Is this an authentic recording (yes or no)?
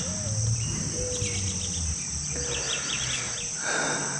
yes